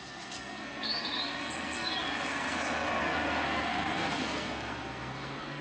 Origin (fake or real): fake